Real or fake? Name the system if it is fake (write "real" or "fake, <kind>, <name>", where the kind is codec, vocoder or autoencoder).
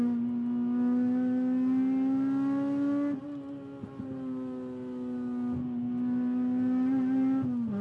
real